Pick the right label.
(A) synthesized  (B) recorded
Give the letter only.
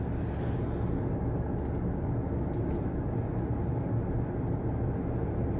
B